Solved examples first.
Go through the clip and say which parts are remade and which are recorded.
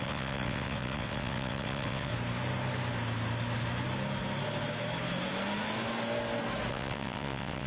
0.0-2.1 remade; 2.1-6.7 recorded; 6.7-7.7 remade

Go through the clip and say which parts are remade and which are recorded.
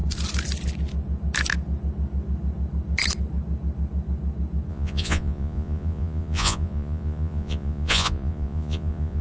0.0-4.7 recorded; 4.7-9.2 remade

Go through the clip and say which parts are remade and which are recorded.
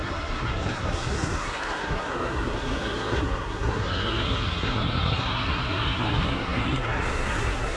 0.0-7.8 remade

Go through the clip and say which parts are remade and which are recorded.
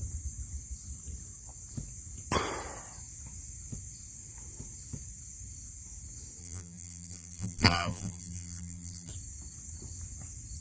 0.0-6.4 recorded; 6.4-9.1 remade; 9.1-10.6 recorded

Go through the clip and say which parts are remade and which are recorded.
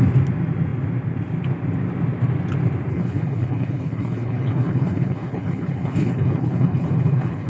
0.0-2.9 recorded; 2.9-7.5 remade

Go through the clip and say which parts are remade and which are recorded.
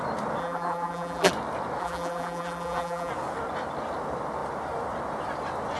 0.0-0.4 recorded; 0.4-1.3 remade; 1.3-1.8 recorded; 1.8-3.1 remade; 3.1-5.8 recorded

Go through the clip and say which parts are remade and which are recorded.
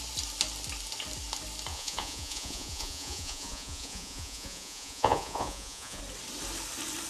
0.0-1.7 recorded; 1.7-6.0 remade; 6.0-7.1 recorded